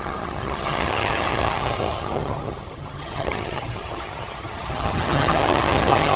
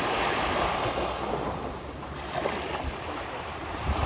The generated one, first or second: first